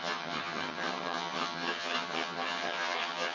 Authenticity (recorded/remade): remade